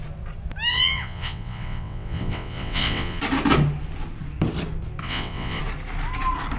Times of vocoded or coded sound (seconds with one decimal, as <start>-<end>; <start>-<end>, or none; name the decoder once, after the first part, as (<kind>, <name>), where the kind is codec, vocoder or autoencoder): 0.7-3.2 (vocoder, WaveNeXt); 5.0-5.6